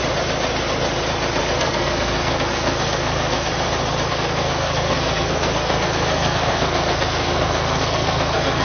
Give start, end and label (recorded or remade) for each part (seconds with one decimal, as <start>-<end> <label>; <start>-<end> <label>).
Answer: 0.0-1.6 recorded; 1.6-3.5 remade; 3.5-4.1 recorded; 4.1-8.6 remade